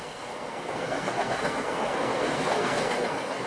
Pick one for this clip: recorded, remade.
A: remade